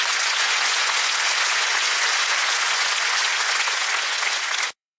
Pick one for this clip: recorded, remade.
remade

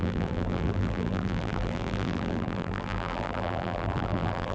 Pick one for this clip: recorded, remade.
remade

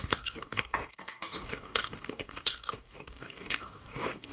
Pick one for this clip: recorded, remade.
remade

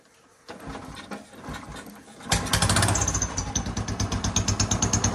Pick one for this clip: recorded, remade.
recorded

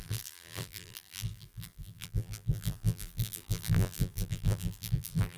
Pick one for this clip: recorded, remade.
remade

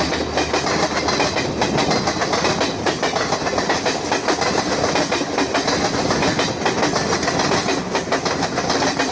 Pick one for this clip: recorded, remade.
recorded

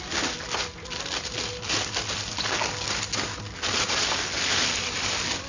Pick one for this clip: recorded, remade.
recorded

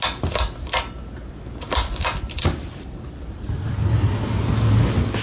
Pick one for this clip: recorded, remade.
recorded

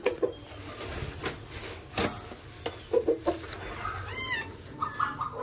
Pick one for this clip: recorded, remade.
recorded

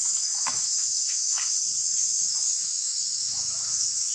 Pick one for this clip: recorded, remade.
remade